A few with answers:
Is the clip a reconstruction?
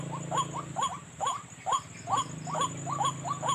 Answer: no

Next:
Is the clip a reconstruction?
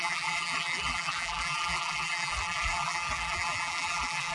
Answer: yes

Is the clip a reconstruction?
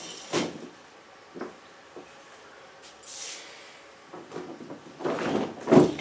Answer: no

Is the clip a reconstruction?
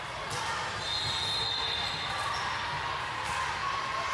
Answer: no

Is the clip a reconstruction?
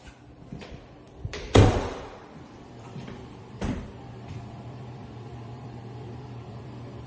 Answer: yes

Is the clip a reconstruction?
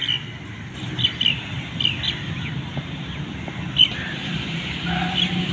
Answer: no